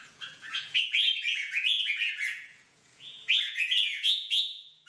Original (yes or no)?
no